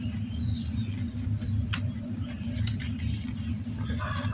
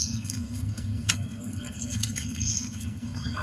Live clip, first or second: first